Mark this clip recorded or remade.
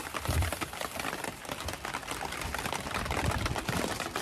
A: remade